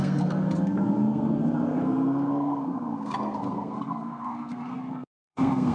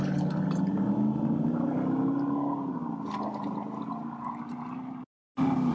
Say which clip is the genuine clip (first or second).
second